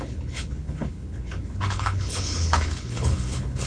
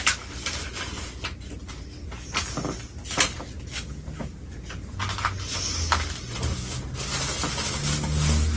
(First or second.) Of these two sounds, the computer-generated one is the first